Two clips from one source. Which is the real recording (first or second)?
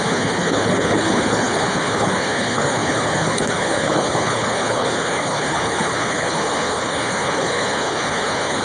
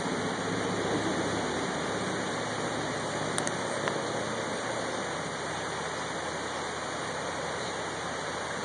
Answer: second